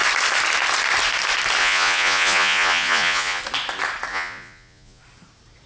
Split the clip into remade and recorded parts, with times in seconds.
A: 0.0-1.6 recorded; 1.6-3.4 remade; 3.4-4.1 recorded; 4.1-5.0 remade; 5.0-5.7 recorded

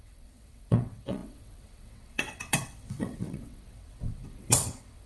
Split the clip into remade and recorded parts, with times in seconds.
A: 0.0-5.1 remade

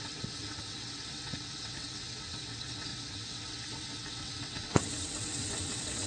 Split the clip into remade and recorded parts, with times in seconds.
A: 0.0-6.1 remade

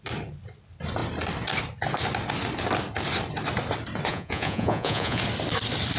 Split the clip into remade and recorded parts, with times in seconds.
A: 0.0-4.1 recorded; 4.1-5.2 remade; 5.2-6.0 recorded

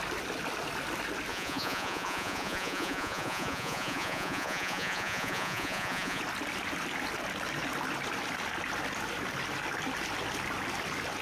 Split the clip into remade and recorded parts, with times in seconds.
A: 0.0-1.3 recorded; 1.3-6.2 remade; 6.2-11.2 recorded